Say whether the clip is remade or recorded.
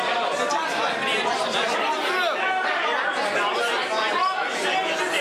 recorded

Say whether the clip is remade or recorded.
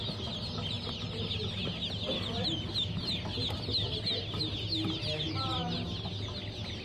recorded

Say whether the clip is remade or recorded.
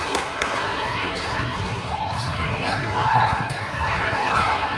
remade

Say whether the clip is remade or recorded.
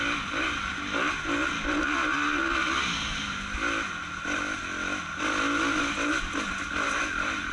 recorded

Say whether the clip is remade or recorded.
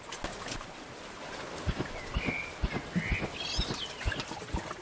recorded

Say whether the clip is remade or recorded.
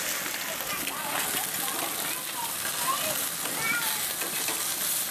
recorded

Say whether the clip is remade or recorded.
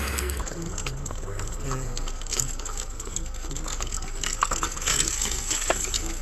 remade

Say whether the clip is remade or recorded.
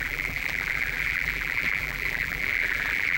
remade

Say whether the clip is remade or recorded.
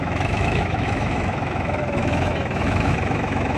remade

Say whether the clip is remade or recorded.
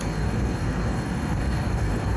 remade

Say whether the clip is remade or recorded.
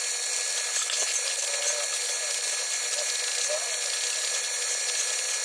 recorded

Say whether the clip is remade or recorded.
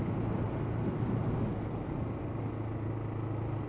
recorded